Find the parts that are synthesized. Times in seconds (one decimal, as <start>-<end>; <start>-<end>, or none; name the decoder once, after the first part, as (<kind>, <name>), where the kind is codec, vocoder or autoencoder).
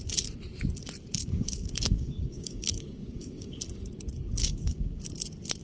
1.2-3.6 (codec, DAC); 4.4-5.0